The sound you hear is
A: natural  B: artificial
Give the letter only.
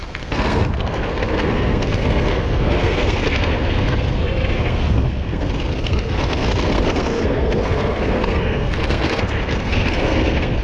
B